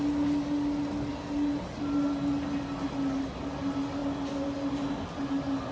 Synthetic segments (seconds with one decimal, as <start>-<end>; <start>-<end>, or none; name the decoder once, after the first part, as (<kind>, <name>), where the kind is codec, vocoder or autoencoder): none